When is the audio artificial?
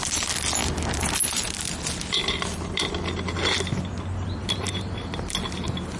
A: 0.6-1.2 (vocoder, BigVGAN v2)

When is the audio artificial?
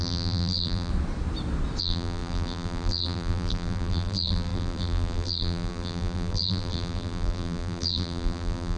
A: 0.0-0.9 (vocoder, BigVGAN v2); 1.8-8.8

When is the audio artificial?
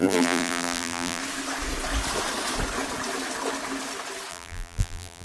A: 0.0-1.2 (vocoder, BigVGAN v2); 4.3-5.2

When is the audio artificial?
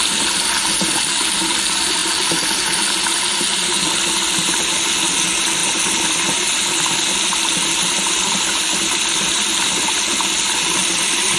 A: none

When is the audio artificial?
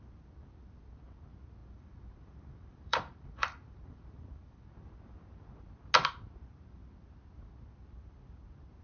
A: 1.6-4.7 (vocoder, BigVGAN v2)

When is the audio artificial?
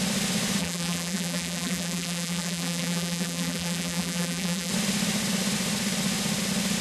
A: 0.6-4.7 (vocoder, BigVGAN v2)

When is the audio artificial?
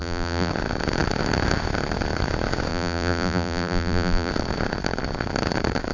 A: 0.0-0.5 (vocoder, BigVGAN v2); 2.7-4.3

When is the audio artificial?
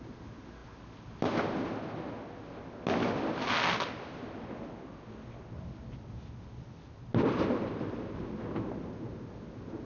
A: none